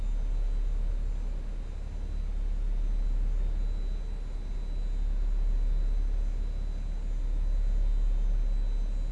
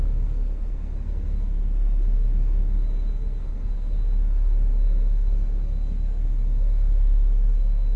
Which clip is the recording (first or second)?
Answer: first